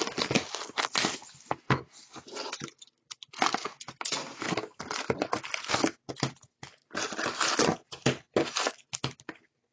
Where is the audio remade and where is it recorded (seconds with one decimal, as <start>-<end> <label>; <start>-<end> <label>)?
0.0-9.7 recorded